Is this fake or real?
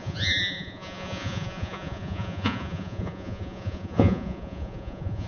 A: fake